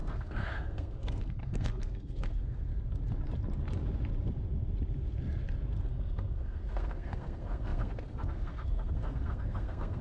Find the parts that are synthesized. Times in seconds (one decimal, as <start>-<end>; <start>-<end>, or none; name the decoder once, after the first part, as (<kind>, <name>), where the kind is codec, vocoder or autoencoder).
0.0-2.7 (codec, SNAC); 5.8-10.0